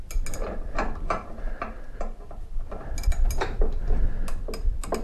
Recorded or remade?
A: recorded